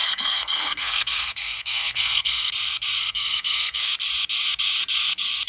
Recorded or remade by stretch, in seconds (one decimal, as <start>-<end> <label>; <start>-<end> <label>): 0.0-2.5 remade; 2.5-3.0 recorded; 3.0-3.8 remade; 3.8-5.5 recorded